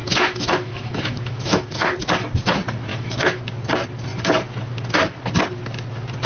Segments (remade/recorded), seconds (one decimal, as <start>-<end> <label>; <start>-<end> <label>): 0.0-2.0 remade; 2.0-2.9 recorded; 2.9-3.4 remade; 3.4-6.3 recorded